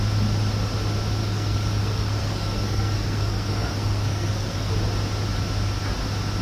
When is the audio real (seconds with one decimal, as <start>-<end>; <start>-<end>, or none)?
0.0-1.2; 4.7-6.4

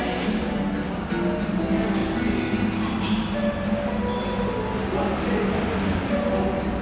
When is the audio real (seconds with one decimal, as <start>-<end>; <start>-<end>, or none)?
0.0-6.8

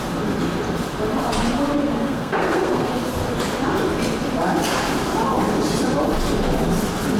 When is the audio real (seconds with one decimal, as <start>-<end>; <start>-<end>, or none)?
0.0-1.8; 2.9-7.2